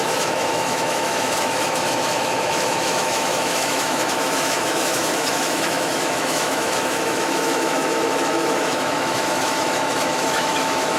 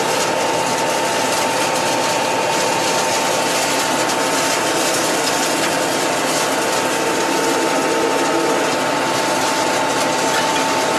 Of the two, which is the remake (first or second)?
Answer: first